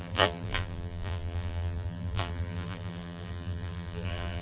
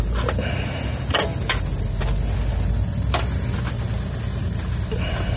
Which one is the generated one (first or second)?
first